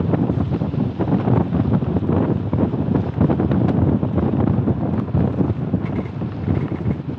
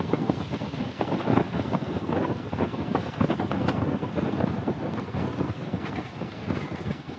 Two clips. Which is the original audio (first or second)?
first